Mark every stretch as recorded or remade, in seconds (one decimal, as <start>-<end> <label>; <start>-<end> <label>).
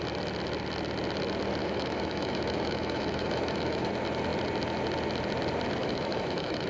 0.0-1.6 recorded; 1.6-3.9 remade; 3.9-5.8 recorded; 5.8-6.7 remade